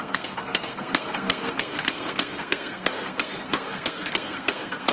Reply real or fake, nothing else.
fake